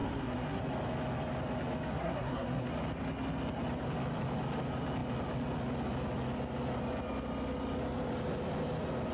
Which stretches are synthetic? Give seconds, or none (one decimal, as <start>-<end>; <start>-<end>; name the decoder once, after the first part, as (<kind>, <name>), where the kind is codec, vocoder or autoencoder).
0.0-0.6 (codec, SNAC); 1.9-2.7